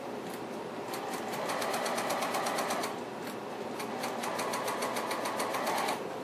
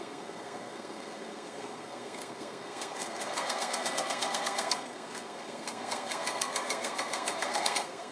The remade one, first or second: second